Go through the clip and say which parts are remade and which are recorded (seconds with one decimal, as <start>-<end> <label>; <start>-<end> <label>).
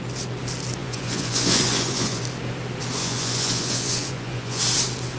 0.0-0.8 recorded; 0.8-2.2 remade; 2.2-3.0 recorded; 3.0-4.6 remade; 4.6-5.2 recorded